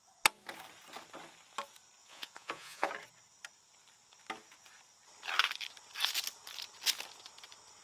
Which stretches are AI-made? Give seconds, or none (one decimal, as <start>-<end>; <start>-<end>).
2.0-2.9